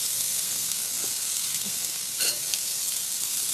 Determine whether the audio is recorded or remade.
remade